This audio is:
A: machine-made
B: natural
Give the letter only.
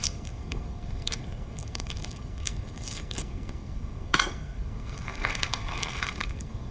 A